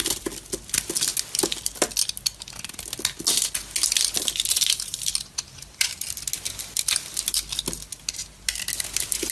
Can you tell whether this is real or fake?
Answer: real